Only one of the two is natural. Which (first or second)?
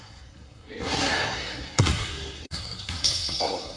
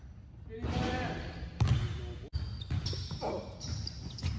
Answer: second